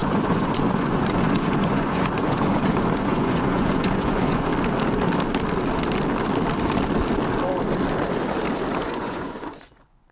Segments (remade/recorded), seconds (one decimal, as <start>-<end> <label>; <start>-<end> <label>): 0.0-4.5 remade; 4.5-8.8 recorded; 8.8-10.1 remade